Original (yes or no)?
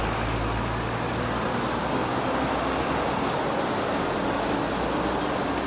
yes